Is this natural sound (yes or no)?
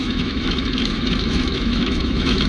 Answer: no